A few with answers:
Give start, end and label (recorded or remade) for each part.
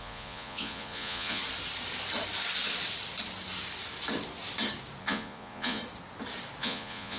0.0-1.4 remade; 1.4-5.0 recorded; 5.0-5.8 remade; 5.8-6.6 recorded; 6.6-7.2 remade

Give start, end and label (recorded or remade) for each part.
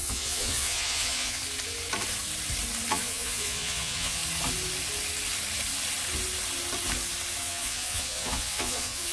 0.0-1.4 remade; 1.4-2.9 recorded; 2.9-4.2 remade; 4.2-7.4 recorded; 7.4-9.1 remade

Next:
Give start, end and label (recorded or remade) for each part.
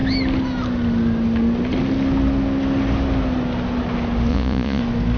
0.0-4.3 recorded; 4.3-4.8 remade; 4.8-5.2 recorded